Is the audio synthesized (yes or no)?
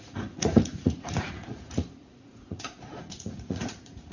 yes